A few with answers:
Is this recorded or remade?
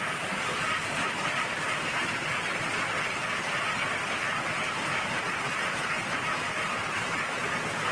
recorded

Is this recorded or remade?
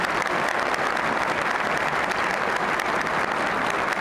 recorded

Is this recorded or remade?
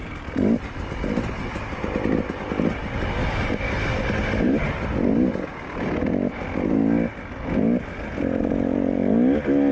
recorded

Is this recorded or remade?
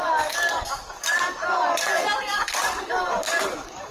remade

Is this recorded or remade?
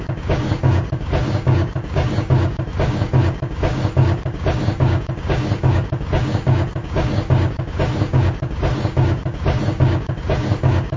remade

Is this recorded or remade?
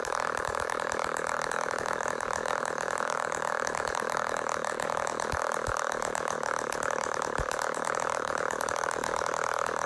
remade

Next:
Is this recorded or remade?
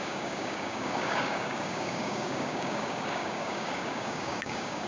remade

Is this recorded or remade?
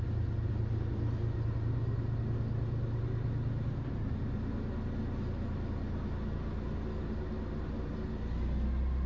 recorded